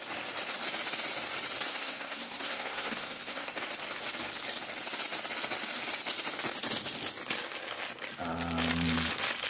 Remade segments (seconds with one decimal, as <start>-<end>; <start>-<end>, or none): 1.7-3.6